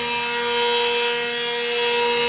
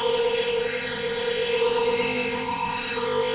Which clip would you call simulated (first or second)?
second